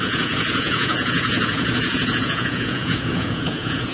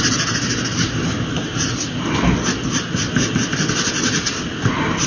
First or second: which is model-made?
first